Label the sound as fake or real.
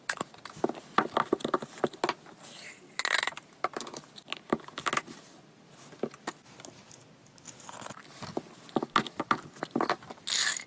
real